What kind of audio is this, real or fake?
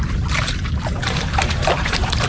fake